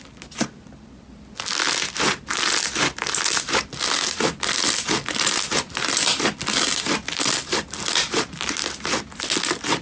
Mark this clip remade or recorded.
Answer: recorded